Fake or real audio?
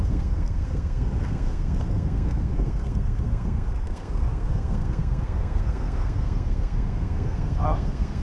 fake